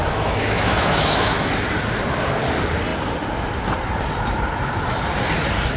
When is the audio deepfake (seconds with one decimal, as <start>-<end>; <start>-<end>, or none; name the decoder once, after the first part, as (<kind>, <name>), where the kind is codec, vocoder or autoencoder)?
0.0-1.5 (autoencoder, DAC-VAE)